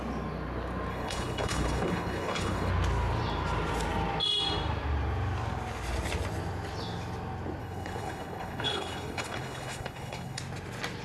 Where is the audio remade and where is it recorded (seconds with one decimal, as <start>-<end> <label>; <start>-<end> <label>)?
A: 0.0-0.9 recorded; 0.9-2.7 remade; 2.7-7.6 recorded; 7.6-10.4 remade; 10.4-11.0 recorded